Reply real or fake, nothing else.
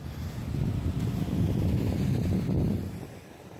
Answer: real